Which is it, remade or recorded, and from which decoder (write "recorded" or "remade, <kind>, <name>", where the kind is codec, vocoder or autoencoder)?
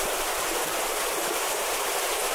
remade, vocoder, BigVGAN v2